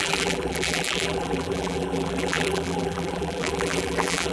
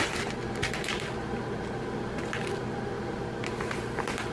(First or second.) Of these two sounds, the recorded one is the second